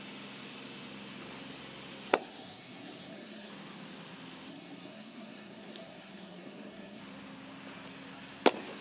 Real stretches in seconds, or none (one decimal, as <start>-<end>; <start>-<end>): 0.0-2.1; 3.5-4.5; 7.0-8.8